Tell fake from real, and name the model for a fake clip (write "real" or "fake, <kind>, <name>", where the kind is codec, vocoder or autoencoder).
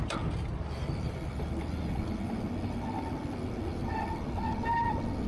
real